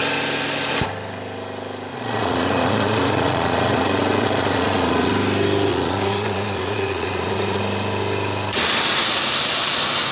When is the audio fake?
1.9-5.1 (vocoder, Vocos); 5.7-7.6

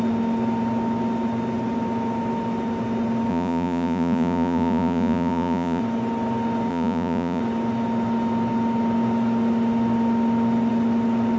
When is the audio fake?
3.3-5.8 (vocoder, Vocos); 6.7-7.4

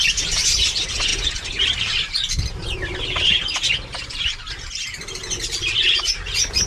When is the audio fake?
none

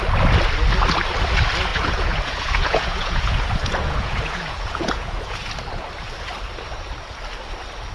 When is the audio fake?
1.7-5.5 (vocoder, Vocos)